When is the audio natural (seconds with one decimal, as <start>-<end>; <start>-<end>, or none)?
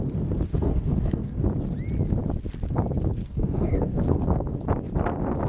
0.0-0.5; 1.4-3.2; 4.6-5.5